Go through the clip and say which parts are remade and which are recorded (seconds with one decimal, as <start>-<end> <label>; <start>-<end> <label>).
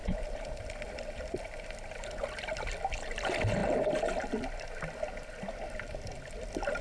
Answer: 0.0-2.9 remade; 2.9-6.8 recorded